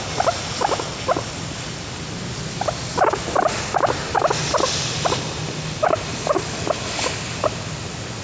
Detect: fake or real real